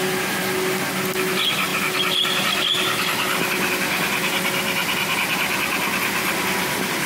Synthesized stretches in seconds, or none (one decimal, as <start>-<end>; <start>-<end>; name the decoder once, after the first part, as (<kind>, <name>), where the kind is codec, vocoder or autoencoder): 1.7-3.7 (vocoder, BigVGAN v2)